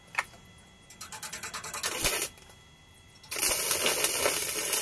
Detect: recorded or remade recorded